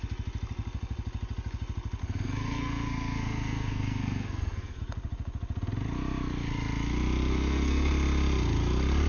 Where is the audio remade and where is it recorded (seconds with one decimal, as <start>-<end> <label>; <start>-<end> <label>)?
0.0-2.0 recorded; 2.0-4.8 remade; 4.8-7.3 recorded; 7.3-7.9 remade; 7.9-9.1 recorded